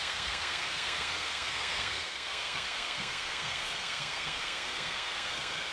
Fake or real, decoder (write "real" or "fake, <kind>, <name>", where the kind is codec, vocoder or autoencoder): fake, codec, SNAC